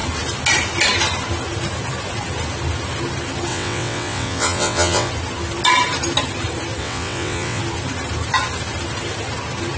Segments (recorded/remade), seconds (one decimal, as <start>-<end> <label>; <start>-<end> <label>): 0.0-3.5 recorded; 3.5-5.1 remade; 5.1-6.8 recorded; 6.8-7.6 remade; 7.6-9.8 recorded